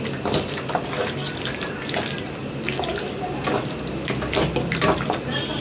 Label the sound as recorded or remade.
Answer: recorded